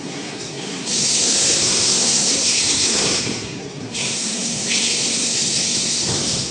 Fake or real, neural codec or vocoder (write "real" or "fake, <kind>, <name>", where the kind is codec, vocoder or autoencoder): fake, codec, SNAC